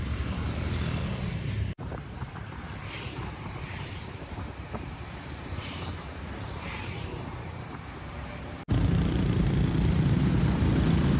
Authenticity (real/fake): fake